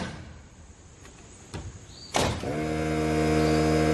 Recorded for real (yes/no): yes